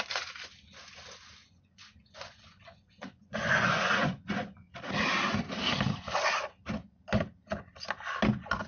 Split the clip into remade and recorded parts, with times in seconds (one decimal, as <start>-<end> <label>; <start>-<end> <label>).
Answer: 0.0-1.4 recorded; 1.4-4.7 remade; 4.7-8.7 recorded

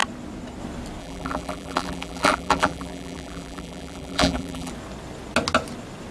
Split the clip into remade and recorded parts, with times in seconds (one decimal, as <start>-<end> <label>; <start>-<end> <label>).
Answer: 0.0-1.0 recorded; 1.0-4.7 remade; 4.7-6.1 recorded

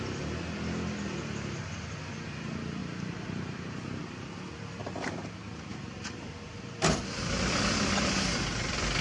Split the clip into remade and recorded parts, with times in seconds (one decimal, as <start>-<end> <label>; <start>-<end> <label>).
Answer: 0.0-2.8 recorded; 2.8-4.0 remade; 4.0-4.8 recorded; 4.8-5.3 remade; 5.3-5.7 recorded; 5.7-7.2 remade; 7.2-9.0 recorded

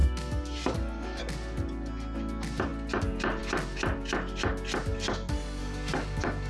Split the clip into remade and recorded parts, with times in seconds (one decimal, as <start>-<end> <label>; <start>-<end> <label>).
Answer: 0.0-1.2 remade; 1.2-5.6 recorded; 5.6-6.5 remade

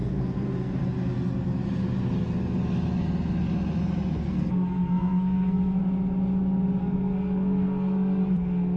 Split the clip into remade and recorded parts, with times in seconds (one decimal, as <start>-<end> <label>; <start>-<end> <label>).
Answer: 0.0-0.8 remade; 0.8-4.2 recorded; 4.2-5.8 remade; 5.8-6.8 recorded; 6.8-8.8 remade

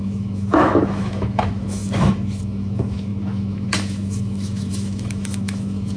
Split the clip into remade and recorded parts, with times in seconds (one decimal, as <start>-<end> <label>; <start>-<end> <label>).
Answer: 0.0-6.0 remade

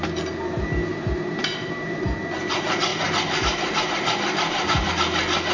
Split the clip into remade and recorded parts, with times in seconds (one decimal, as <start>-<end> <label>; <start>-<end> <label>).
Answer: 0.0-0.9 recorded; 0.9-2.0 remade; 2.0-2.9 recorded; 2.9-4.9 remade; 4.9-5.5 recorded

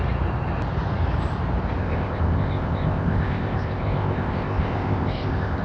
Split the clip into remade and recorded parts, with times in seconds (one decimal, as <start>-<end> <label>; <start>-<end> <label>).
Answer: 0.0-1.8 recorded; 1.8-5.6 remade